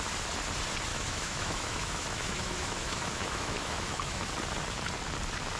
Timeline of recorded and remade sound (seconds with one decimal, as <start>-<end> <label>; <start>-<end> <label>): 0.0-0.9 recorded; 0.9-4.3 remade; 4.3-5.6 recorded